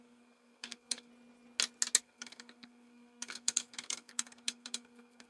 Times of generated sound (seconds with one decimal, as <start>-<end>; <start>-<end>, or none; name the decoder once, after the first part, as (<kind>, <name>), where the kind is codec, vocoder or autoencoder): 0.0-1.1 (codec, SNAC); 2.0-5.3